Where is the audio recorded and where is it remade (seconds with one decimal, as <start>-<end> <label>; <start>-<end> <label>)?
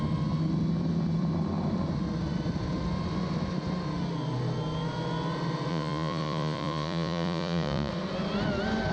0.0-5.7 recorded; 5.7-7.9 remade; 7.9-8.9 recorded